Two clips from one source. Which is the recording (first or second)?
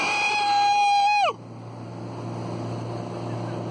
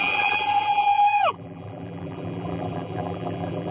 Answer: first